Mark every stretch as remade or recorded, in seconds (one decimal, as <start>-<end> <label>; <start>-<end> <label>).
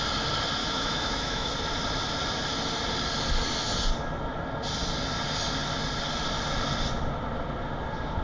0.0-0.6 recorded; 0.6-1.5 remade; 1.5-8.2 recorded